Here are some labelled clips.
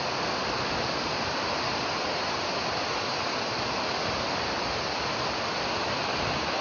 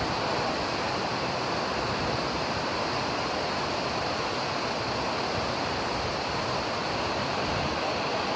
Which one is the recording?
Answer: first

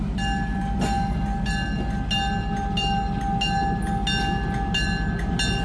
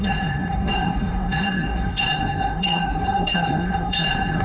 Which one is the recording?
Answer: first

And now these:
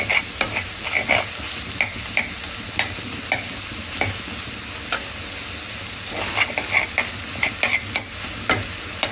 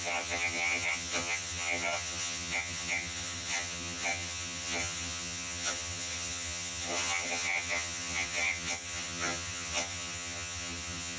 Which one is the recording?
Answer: first